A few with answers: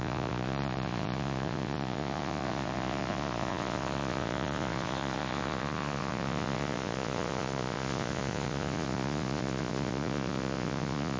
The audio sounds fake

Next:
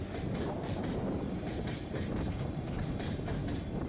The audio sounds fake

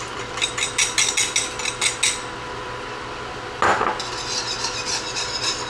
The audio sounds real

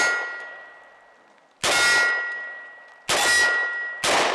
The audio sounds real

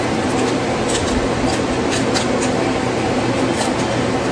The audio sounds real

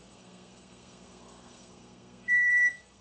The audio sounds fake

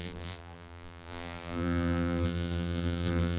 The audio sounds fake